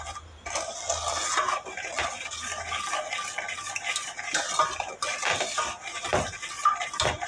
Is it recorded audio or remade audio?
recorded